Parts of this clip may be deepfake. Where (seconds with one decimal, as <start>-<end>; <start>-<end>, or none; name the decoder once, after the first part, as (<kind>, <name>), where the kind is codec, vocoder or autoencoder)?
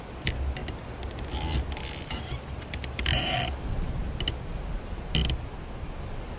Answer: none